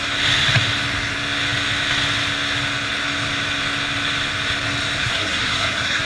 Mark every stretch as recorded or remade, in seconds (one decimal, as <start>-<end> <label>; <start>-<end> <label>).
0.0-5.0 recorded; 5.0-6.0 remade